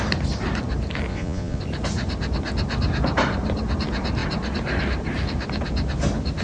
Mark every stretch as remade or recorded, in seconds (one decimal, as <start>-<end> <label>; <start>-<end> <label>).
0.0-1.1 recorded; 1.1-1.6 remade; 1.6-6.4 recorded